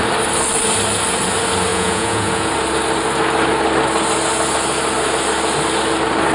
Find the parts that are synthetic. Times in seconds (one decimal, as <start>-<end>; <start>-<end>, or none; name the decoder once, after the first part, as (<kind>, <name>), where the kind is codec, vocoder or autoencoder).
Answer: 1.7-2.5 (vocoder, Vocos)